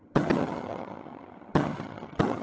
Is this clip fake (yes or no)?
yes